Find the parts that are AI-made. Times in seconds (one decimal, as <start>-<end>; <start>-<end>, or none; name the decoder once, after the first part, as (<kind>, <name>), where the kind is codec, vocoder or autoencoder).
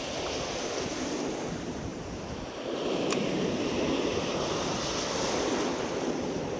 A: none